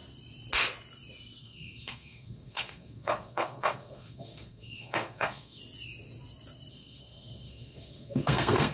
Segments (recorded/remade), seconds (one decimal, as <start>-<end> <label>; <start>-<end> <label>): 0.0-1.4 recorded; 1.4-5.6 remade; 5.6-6.7 recorded; 6.7-8.7 remade